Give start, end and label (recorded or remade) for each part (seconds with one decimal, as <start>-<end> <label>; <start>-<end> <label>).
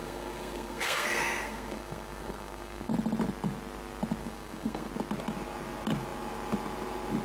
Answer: 0.0-2.9 remade; 2.9-4.2 recorded; 4.2-4.9 remade; 4.9-7.2 recorded